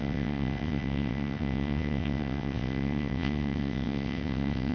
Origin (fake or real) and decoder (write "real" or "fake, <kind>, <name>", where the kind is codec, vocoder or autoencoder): fake, vocoder, WaveNeXt